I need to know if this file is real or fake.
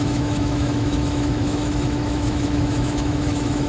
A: fake